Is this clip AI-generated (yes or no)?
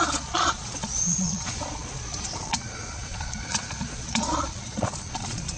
yes